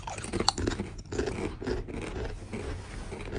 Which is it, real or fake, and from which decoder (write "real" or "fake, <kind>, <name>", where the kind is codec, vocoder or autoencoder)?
real